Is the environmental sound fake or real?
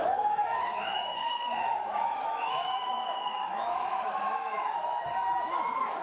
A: fake